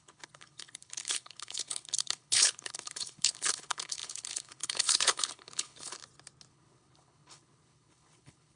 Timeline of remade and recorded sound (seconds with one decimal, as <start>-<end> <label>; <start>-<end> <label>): 0.0-6.0 remade; 6.0-6.5 recorded; 6.5-8.6 remade